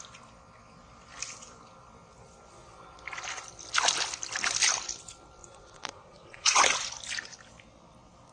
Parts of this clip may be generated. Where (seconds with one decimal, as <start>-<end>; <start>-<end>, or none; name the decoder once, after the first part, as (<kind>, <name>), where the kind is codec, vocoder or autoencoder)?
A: 5.4-6.6 (vocoder, Vocos)